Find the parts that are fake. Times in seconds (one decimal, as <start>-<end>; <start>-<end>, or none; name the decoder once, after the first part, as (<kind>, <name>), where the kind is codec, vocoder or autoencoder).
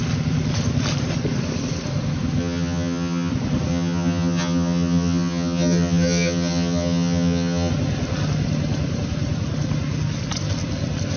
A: 2.4-3.3 (vocoder, HiFi-GAN); 3.7-7.7